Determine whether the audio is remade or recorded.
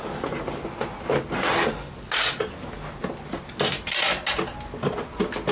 recorded